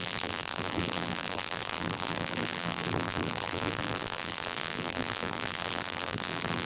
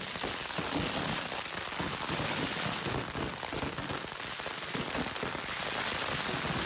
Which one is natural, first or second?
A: second